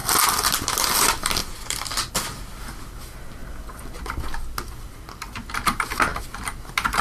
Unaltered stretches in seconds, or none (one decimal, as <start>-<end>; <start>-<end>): 0.0-7.0